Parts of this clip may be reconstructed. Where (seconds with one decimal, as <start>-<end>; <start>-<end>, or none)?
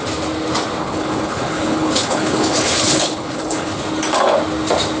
0.8-3.8